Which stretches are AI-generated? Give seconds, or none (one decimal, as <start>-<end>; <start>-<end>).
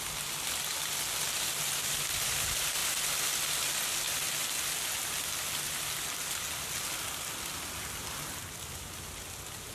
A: none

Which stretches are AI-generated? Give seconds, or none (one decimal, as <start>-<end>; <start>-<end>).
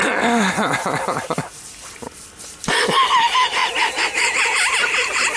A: none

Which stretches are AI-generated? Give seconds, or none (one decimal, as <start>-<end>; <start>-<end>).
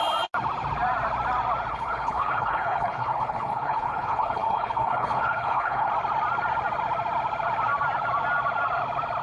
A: 1.7-5.9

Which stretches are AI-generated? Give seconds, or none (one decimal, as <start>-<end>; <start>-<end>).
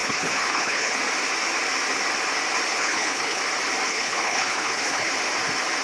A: 0.0-1.0; 2.7-3.4; 3.9-5.1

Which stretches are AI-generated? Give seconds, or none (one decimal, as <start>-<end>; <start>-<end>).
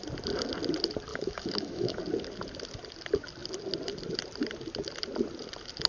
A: 1.1-2.0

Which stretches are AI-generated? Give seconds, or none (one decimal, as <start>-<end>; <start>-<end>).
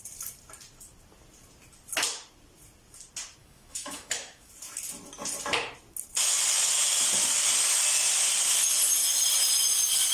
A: 3.4-4.5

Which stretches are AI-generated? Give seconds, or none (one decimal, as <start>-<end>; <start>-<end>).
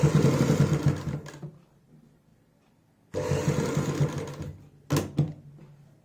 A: none